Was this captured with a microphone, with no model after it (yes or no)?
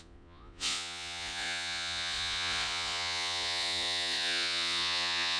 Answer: no